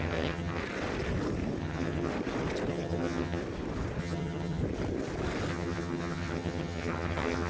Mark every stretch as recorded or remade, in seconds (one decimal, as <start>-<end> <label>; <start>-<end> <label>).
0.0-0.6 remade; 0.6-1.6 recorded; 1.6-2.1 remade; 2.1-2.7 recorded; 2.7-3.4 remade; 3.4-4.0 recorded; 4.0-4.6 remade; 4.6-5.5 recorded; 5.5-7.5 remade